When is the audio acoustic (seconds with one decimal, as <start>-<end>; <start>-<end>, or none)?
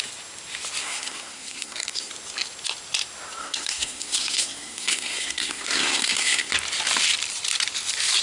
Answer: 0.0-0.8; 2.1-3.4; 6.5-8.2